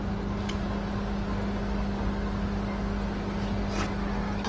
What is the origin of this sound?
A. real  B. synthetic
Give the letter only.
A